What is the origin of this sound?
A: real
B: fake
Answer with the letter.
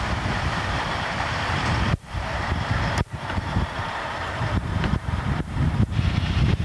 B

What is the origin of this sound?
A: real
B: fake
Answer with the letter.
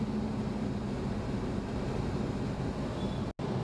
A